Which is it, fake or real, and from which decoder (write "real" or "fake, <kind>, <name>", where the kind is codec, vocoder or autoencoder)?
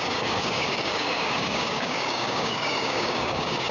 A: fake, codec, DAC